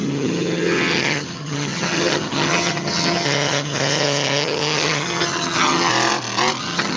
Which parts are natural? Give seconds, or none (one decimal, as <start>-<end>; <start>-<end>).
5.9-6.6